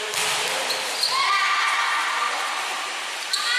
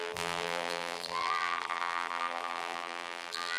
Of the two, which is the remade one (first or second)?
second